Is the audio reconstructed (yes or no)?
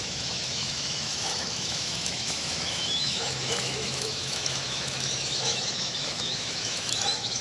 yes